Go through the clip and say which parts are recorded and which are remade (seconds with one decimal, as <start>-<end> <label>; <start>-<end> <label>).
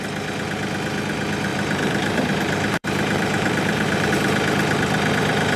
0.0-1.5 recorded; 1.5-4.1 remade; 4.1-5.6 recorded